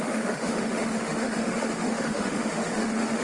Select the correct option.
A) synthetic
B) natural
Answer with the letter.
A